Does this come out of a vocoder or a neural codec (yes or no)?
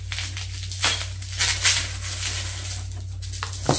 no